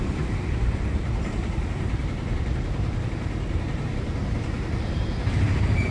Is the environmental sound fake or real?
fake